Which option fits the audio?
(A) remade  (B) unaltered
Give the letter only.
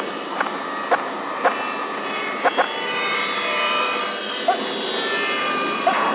B